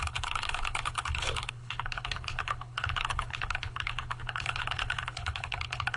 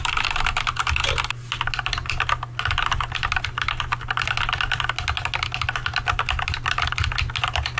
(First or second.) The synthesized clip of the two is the first